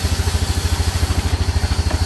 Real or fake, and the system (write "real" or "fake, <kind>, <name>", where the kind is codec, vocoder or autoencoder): fake, vocoder, BigVGAN v2